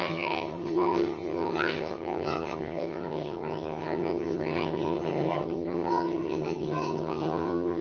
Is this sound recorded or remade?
remade